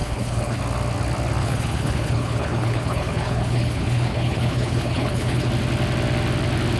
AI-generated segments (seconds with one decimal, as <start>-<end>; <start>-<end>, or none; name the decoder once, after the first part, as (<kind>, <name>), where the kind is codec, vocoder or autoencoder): 0.0-0.6 (codec, HILCodec); 1.4-5.5